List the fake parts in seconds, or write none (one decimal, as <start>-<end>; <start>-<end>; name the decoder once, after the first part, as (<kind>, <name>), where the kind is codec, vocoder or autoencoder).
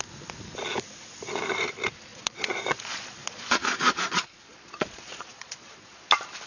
2.1-6.0 (vocoder, Vocos)